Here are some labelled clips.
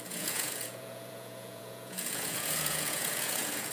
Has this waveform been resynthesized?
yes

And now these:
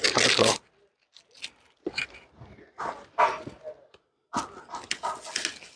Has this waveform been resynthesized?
no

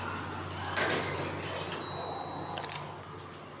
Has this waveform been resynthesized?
no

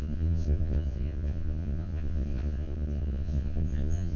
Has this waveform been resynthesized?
yes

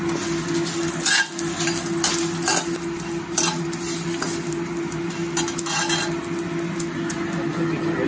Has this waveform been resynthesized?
no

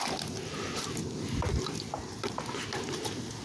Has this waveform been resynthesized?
no